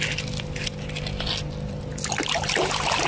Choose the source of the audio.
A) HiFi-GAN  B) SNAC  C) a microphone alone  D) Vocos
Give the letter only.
C